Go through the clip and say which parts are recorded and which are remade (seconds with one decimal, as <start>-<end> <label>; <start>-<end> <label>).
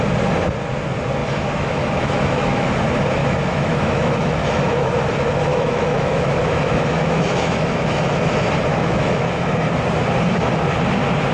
0.0-1.2 recorded; 1.2-2.7 remade; 2.7-3.2 recorded; 3.2-4.9 remade; 4.9-5.5 recorded; 5.5-8.1 remade; 8.1-8.7 recorded; 8.7-9.5 remade; 9.5-11.3 recorded